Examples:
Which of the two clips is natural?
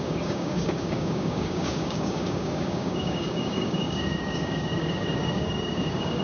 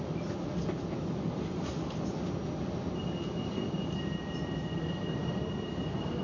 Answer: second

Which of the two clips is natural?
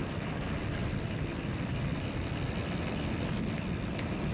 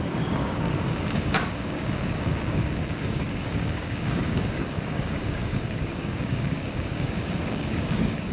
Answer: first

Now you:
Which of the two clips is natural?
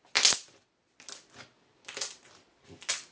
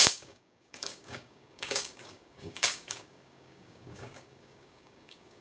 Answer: first